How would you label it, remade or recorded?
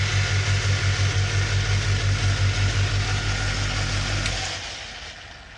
recorded